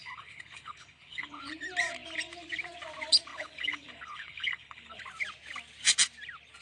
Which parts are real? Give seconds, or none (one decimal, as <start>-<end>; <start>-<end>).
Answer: 1.4-3.3; 5.0-6.6